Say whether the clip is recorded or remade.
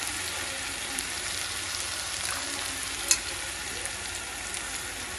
recorded